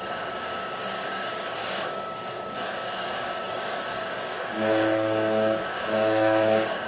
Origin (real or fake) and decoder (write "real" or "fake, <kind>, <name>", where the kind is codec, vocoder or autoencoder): fake, codec, DAC